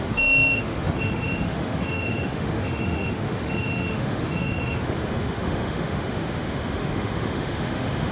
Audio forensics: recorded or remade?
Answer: remade